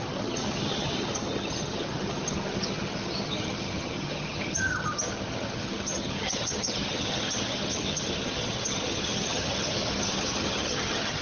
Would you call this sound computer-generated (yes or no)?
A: yes